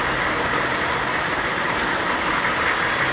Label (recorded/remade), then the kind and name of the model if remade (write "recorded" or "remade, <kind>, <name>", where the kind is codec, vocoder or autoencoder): recorded